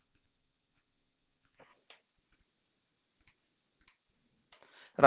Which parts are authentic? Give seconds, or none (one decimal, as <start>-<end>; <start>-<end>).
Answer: 1.7-5.1